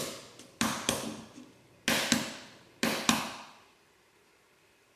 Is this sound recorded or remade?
recorded